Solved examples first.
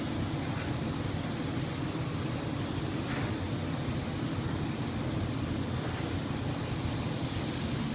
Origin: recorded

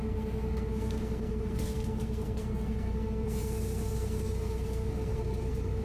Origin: remade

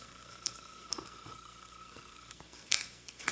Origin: remade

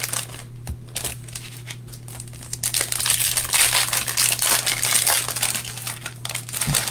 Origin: recorded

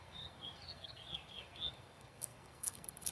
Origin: remade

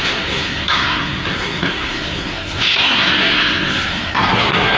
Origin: remade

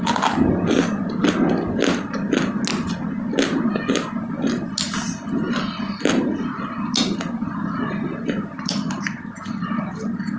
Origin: recorded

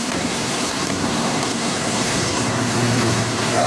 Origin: remade